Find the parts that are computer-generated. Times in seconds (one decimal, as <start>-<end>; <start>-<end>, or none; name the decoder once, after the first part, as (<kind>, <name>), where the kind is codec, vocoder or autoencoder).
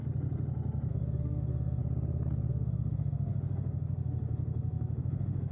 0.9-1.8 (autoencoder, DAC-VAE); 2.5-5.5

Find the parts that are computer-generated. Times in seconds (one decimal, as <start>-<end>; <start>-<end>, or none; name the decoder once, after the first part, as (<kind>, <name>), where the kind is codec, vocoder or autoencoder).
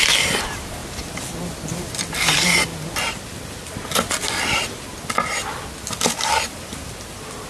none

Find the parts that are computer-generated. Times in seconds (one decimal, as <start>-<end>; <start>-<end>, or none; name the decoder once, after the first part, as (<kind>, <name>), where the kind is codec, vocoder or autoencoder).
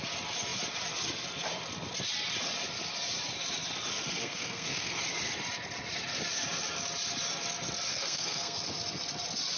4.2-5.0 (codec, SNAC); 7.9-8.6